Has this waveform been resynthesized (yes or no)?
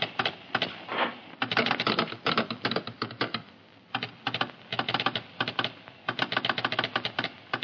no